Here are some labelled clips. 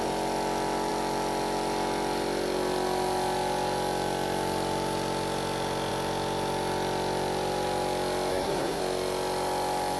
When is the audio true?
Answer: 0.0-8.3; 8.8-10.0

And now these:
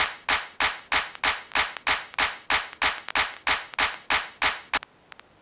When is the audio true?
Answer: 0.0-5.4

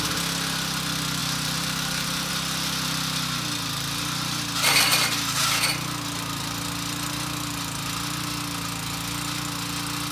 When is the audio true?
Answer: 0.0-1.2; 2.3-10.1